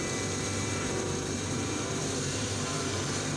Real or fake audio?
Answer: fake